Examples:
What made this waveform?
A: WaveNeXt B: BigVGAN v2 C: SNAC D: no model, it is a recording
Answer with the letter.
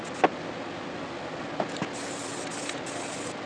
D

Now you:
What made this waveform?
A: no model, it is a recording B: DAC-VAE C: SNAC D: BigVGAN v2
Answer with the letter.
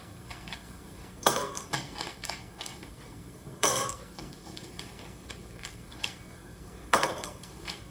C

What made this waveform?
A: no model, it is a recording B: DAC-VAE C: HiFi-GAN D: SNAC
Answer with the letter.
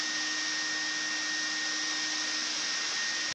A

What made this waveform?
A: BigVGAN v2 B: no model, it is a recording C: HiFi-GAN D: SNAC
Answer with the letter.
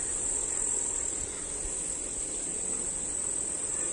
B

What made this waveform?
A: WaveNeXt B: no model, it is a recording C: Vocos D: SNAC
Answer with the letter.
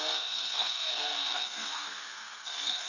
D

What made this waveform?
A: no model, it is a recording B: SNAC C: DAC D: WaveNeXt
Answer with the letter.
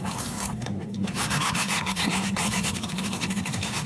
B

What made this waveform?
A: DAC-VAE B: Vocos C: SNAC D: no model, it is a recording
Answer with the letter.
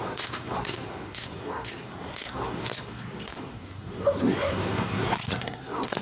C